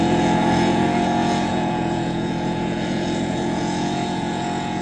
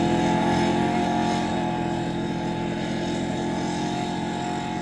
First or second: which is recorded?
second